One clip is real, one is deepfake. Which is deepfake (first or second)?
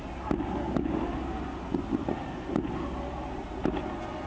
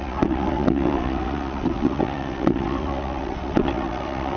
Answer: second